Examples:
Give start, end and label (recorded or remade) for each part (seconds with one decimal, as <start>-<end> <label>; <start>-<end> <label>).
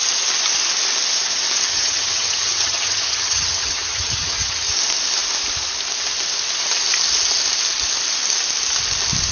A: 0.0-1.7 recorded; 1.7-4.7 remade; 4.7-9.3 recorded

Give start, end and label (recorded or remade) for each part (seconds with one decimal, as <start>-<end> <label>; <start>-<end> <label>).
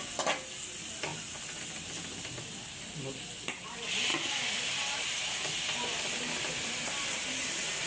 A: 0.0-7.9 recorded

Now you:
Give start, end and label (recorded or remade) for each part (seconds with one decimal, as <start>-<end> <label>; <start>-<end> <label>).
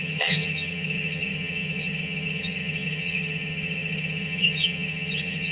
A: 0.0-5.5 remade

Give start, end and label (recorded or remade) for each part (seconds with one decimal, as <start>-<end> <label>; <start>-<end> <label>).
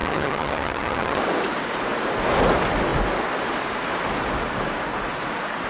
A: 0.0-1.2 remade; 1.2-5.7 recorded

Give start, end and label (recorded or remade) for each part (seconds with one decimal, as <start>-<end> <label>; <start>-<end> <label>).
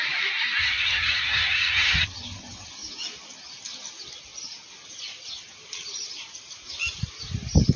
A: 0.0-0.6 recorded; 0.6-2.7 remade; 2.7-7.8 recorded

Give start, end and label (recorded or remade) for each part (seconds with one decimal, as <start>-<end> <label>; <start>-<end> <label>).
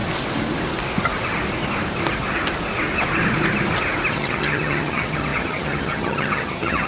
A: 0.0-4.1 recorded; 4.1-6.9 remade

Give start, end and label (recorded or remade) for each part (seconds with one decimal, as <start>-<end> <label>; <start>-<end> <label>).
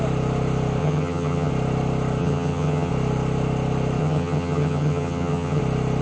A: 0.0-0.8 recorded; 0.8-1.5 remade; 1.5-2.2 recorded; 2.2-2.9 remade; 2.9-4.0 recorded; 4.0-5.6 remade; 5.6-6.0 recorded